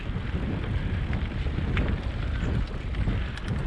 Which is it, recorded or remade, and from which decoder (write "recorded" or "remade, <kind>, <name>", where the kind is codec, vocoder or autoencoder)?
recorded